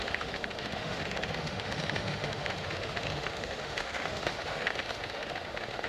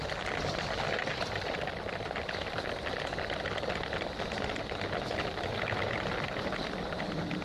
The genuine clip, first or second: second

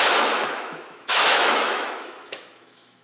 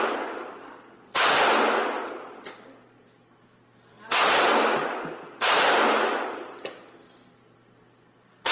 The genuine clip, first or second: second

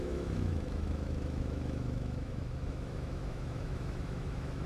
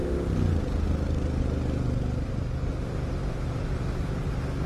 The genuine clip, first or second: second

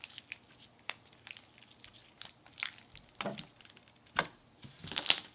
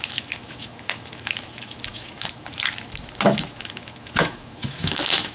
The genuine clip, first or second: first